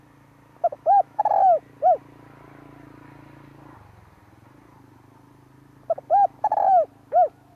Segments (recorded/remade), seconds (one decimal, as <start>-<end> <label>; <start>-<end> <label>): 0.0-0.6 recorded; 0.6-1.2 remade; 1.2-7.6 recorded